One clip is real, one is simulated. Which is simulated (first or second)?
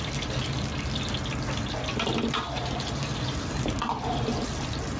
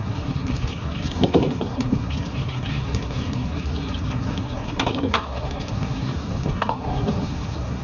second